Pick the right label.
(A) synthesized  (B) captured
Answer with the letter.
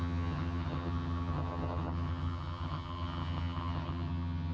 A